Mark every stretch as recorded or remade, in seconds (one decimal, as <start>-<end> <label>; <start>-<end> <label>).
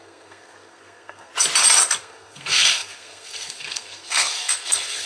0.0-1.3 remade; 1.3-2.0 recorded; 2.0-5.1 remade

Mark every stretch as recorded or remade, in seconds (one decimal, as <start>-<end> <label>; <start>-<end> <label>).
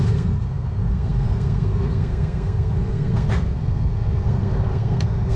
0.0-5.4 remade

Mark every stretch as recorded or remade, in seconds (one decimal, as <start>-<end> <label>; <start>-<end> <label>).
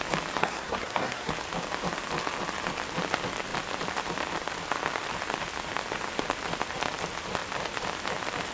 0.0-0.4 recorded; 0.4-1.3 remade; 1.3-8.5 recorded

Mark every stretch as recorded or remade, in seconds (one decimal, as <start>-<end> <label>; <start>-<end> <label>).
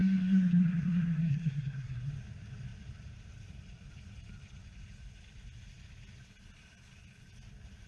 0.0-2.1 remade; 2.1-7.9 recorded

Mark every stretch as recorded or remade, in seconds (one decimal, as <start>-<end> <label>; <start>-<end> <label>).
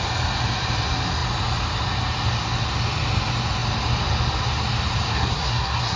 0.0-5.1 recorded; 5.1-6.0 remade